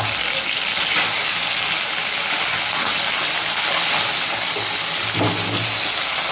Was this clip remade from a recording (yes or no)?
no